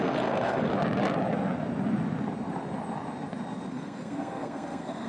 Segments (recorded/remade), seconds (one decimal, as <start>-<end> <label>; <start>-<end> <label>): 0.0-0.7 remade; 0.7-3.7 recorded; 3.7-5.1 remade